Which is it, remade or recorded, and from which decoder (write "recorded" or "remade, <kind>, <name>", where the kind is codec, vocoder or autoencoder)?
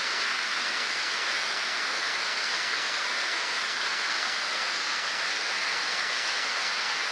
remade, codec, SNAC